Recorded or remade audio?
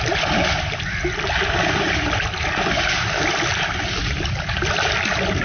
recorded